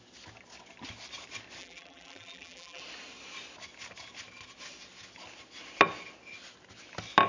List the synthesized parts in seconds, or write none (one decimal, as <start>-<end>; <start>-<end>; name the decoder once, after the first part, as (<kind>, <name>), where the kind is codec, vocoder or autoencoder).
1.6-2.8 (vocoder, BigVGAN v2)

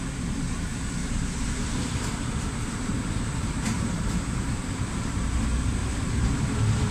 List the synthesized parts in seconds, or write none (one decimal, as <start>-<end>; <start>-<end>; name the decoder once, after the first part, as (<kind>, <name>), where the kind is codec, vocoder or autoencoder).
1.0-5.1 (vocoder, BigVGAN v2); 5.8-6.9